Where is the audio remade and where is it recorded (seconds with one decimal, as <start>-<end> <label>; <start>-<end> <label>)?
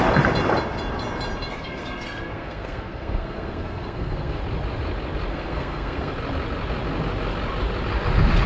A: 0.0-1.5 recorded; 1.5-4.4 remade; 4.4-5.3 recorded; 5.3-6.1 remade; 6.1-8.5 recorded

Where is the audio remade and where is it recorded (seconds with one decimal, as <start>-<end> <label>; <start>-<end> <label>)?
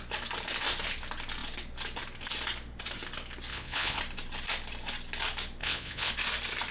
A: 0.0-3.5 recorded; 3.5-4.0 remade; 4.0-5.6 recorded; 5.6-6.1 remade; 6.1-6.7 recorded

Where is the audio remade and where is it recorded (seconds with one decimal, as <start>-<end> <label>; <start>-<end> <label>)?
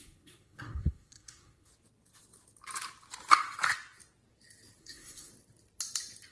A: 0.0-1.7 remade; 1.7-4.8 recorded; 4.8-5.3 remade; 5.3-6.3 recorded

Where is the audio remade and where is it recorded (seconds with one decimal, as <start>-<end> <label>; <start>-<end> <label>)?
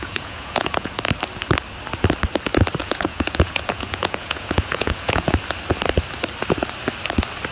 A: 0.0-0.9 remade; 0.9-2.8 recorded; 2.8-5.3 remade; 5.3-7.5 recorded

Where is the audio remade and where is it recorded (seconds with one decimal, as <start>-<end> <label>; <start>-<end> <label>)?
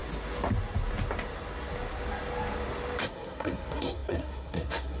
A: 0.0-3.0 recorded; 3.0-5.0 remade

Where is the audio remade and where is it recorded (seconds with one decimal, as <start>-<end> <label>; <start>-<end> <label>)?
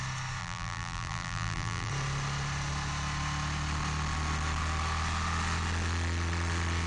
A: 0.0-0.4 recorded; 0.4-1.9 remade; 1.9-6.9 recorded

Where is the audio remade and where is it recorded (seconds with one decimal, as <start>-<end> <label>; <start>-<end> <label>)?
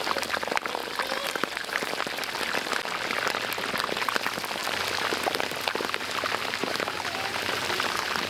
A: 0.0-0.8 recorded; 0.8-1.8 remade; 1.8-6.6 recorded; 6.6-8.3 remade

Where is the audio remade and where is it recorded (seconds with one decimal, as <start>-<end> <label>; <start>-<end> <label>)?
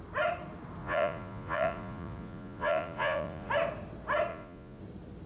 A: 0.0-0.8 recorded; 0.8-3.5 remade; 3.5-4.3 recorded; 4.3-4.8 remade; 4.8-5.3 recorded